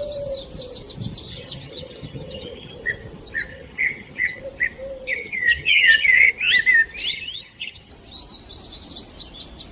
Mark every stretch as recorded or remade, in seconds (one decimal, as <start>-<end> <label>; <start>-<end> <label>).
0.0-1.3 recorded; 1.3-2.7 remade; 2.7-3.5 recorded; 3.5-4.4 remade; 4.4-5.1 recorded; 5.1-6.3 remade; 6.3-7.1 recorded; 7.1-7.9 remade; 7.9-9.7 recorded